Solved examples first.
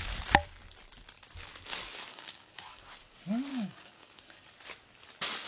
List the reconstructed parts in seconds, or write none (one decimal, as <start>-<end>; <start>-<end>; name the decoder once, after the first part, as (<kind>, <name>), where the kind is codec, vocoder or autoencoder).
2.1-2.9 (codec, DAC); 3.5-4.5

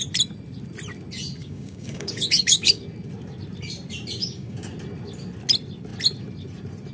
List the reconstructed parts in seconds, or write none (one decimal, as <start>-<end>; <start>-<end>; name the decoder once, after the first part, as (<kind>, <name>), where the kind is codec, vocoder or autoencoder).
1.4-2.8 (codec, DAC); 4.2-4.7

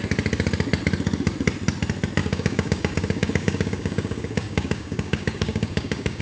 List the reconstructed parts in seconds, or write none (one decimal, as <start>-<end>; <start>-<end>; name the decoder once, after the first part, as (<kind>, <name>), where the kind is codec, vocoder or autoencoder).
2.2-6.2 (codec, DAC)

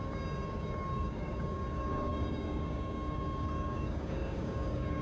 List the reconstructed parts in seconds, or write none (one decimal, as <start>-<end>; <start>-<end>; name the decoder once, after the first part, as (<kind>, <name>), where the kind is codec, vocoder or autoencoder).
0.0-5.0 (codec, DAC)

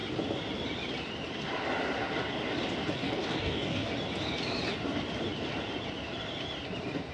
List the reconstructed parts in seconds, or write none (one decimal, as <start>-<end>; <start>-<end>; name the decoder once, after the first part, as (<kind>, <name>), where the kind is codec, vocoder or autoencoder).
3.0-3.9 (codec, DAC)

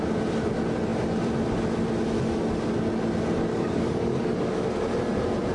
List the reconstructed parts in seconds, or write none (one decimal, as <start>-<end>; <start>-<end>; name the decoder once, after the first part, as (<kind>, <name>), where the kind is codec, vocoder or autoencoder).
3.5-4.7 (codec, DAC)

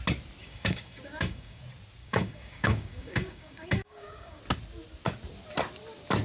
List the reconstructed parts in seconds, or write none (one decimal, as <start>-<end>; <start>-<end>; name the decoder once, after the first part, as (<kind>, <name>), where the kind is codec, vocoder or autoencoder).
0.4-1.6 (codec, DAC); 2.0-4.4